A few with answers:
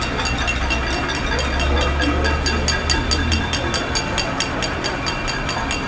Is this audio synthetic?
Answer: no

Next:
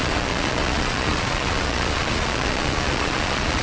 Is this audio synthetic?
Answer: yes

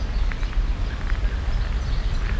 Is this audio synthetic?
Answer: no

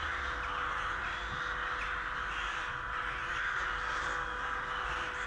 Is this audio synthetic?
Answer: no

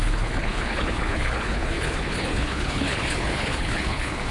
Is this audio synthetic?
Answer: yes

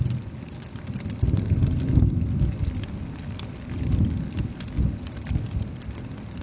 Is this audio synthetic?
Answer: no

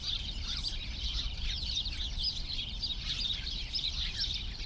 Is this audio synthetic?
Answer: yes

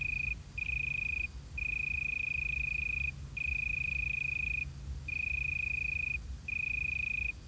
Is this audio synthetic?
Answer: no